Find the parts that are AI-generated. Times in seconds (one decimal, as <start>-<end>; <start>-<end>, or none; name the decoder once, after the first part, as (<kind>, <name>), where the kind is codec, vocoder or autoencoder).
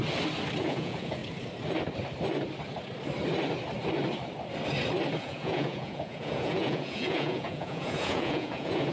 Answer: 0.6-1.2 (vocoder, Vocos); 5.2-8.9